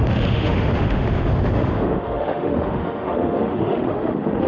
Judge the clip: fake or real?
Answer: fake